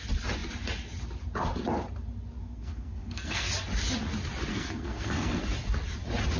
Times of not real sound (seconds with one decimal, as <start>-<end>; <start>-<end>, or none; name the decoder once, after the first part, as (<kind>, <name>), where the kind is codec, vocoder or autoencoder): 2.4-3.5 (codec, SNAC); 4.5-5.4

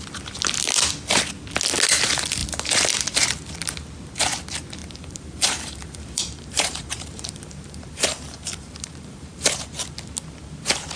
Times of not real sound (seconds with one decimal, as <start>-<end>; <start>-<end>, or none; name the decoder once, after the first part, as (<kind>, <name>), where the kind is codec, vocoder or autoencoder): 4.8-9.5 (vocoder, BigVGAN v2)

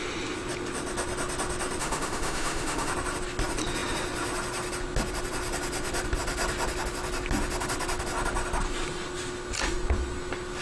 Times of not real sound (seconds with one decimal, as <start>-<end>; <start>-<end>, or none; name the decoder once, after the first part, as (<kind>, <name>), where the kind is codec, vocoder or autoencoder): 1.8-2.9 (autoencoder, DAC-VAE)

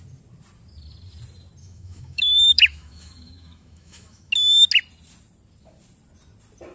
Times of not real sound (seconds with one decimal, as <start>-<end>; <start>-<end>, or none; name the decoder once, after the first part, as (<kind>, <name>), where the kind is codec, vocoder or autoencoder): 1.6-4.3 (autoencoder, DAC-VAE)

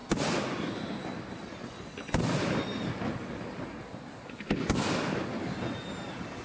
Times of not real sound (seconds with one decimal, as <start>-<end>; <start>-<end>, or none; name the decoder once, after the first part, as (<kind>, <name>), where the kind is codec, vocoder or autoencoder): none

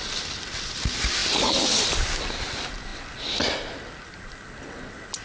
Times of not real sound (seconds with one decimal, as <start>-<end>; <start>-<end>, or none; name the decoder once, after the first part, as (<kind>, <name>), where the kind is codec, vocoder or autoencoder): none